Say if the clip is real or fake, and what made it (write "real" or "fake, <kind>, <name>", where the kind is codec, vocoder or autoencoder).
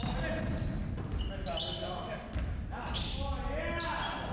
real